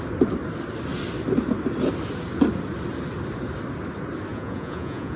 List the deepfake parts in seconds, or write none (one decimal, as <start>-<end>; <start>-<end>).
4.3-5.2